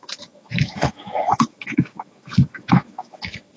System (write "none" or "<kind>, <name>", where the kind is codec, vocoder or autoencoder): autoencoder, DAC-VAE